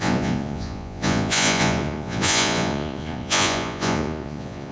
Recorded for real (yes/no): no